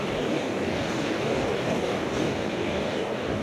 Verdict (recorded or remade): remade